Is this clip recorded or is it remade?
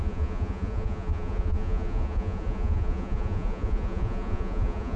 remade